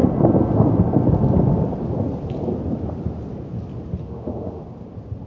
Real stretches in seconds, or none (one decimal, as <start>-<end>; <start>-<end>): 0.0-4.0; 4.6-5.3